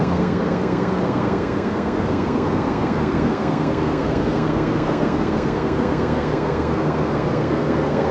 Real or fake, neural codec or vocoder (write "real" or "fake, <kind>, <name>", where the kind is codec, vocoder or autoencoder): fake, codec, SNAC